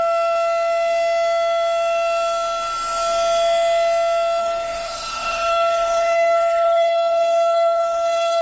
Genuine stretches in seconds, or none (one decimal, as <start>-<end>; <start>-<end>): 0.0-4.4